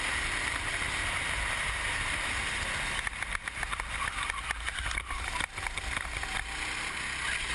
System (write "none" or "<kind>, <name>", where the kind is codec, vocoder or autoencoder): none